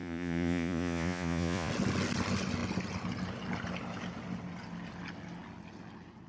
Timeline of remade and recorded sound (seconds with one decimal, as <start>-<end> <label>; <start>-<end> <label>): 0.0-1.7 remade; 1.7-6.3 recorded